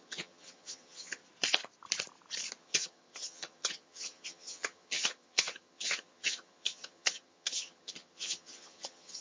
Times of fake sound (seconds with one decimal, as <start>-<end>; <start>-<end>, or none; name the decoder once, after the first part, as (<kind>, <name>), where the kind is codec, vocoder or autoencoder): 0.0-1.2 (vocoder, HiFi-GAN); 2.6-9.2